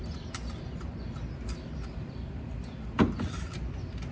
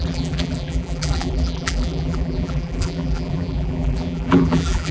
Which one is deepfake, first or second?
second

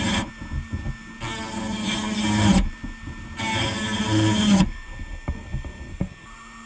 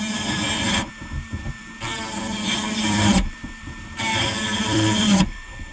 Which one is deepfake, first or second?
second